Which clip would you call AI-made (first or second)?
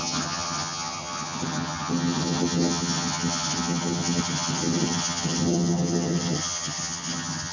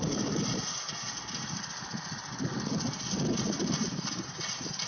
first